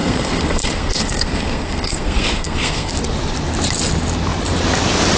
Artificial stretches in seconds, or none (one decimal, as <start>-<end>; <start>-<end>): 0.0-2.9